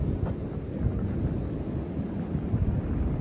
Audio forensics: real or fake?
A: real